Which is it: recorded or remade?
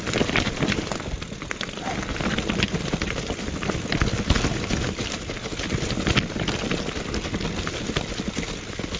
recorded